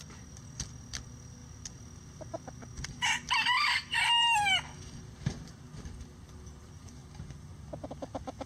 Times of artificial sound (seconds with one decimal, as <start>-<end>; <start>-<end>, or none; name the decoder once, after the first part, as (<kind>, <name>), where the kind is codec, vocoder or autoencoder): 0.0-7.0 (vocoder, BigVGAN v2)